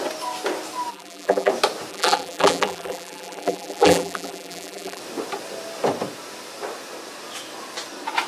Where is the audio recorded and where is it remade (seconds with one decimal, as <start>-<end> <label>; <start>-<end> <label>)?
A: 0.0-0.9 recorded; 0.9-1.5 remade; 1.5-1.9 recorded; 1.9-5.0 remade; 5.0-8.3 recorded